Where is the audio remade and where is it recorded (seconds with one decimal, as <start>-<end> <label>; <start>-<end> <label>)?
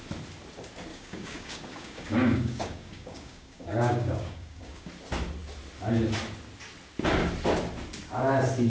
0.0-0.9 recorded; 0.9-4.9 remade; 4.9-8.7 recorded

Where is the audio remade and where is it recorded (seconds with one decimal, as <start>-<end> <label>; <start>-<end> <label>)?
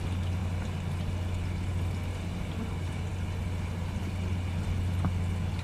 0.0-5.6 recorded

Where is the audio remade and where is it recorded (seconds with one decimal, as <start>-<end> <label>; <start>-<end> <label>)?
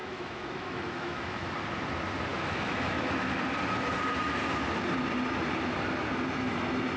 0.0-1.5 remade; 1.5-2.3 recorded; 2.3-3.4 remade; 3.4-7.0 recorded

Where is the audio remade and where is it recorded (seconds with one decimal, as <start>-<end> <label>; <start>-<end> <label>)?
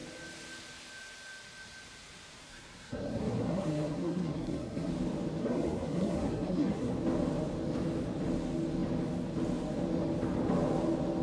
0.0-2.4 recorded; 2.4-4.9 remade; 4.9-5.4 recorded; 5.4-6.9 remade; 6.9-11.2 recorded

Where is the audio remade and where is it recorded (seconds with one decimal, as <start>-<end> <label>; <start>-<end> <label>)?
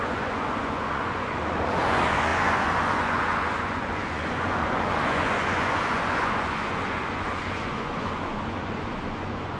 0.0-9.6 remade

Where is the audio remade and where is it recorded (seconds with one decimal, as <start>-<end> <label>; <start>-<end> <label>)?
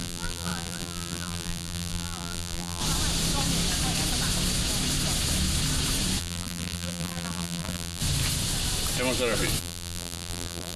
0.0-2.8 remade; 2.8-6.2 recorded; 6.2-8.0 remade; 8.0-9.6 recorded; 9.6-10.8 remade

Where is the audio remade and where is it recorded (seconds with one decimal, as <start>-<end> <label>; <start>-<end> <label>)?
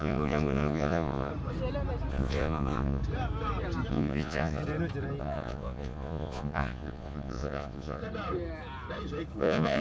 0.0-1.3 remade; 1.3-2.1 recorded; 2.1-3.0 remade; 3.0-3.9 recorded; 3.9-4.6 remade; 4.6-5.2 recorded; 5.2-8.0 remade; 8.0-9.4 recorded; 9.4-9.8 remade